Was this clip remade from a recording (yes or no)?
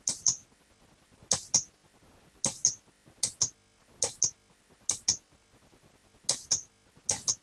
no